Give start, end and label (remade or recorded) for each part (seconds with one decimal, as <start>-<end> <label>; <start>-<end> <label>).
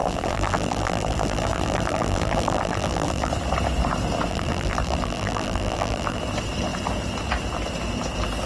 0.0-3.3 remade; 3.3-4.3 recorded; 4.3-6.2 remade; 6.2-8.5 recorded